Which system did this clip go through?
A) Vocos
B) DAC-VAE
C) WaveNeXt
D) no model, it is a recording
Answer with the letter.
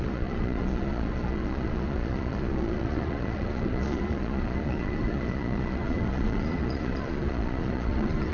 A